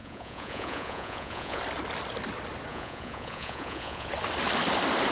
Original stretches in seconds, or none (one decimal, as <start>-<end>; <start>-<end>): 1.6-2.7; 4.1-5.1